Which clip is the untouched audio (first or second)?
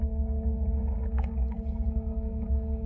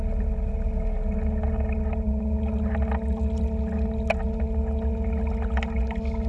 second